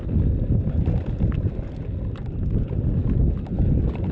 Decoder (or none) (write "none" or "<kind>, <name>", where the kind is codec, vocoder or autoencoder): none